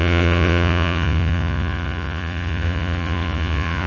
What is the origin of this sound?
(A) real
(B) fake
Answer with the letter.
B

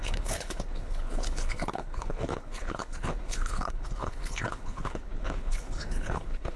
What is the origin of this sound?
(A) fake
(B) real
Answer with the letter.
A